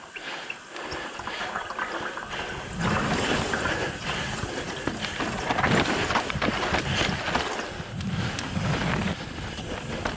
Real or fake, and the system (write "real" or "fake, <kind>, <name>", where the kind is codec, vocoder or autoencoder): real